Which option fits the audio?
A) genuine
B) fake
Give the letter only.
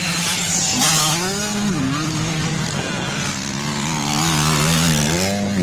A